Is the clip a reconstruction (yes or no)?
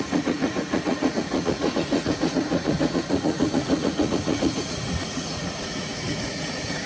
yes